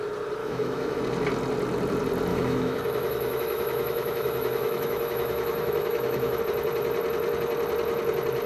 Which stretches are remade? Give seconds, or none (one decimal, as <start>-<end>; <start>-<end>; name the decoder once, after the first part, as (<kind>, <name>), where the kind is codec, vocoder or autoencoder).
0.4-1.0 (autoencoder, DAC-VAE); 2.3-6.4